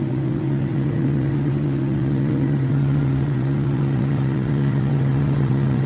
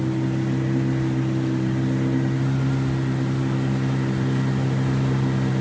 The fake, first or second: first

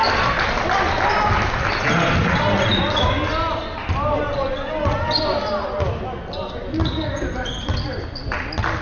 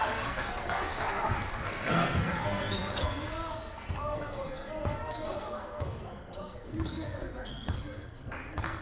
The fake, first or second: second